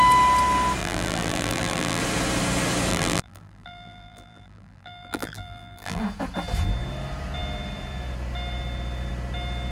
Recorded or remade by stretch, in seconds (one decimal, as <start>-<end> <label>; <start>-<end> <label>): 0.0-0.8 recorded; 0.8-2.0 remade; 2.0-2.9 recorded; 2.9-6.0 remade; 6.0-9.7 recorded